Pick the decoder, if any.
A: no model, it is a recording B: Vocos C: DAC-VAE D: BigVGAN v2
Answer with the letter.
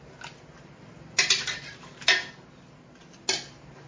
A